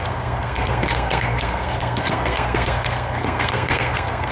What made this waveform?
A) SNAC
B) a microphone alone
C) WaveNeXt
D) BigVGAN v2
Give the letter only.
A